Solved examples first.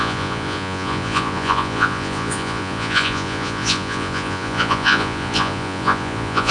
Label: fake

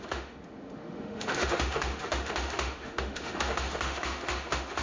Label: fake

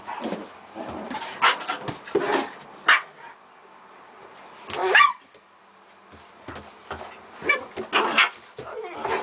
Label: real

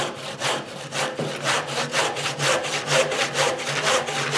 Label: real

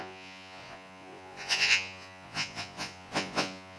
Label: fake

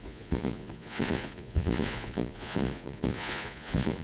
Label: fake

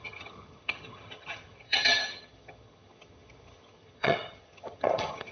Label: fake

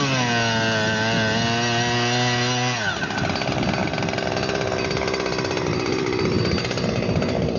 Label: real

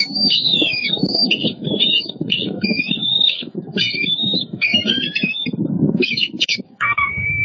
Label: fake